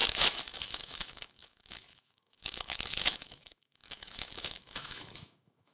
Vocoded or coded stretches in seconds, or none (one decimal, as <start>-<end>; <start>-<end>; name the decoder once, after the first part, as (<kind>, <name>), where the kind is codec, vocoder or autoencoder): 0.0-5.7 (autoencoder, DAC-VAE)